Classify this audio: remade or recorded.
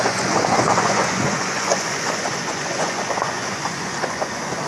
remade